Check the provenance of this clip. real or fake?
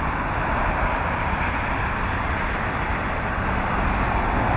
real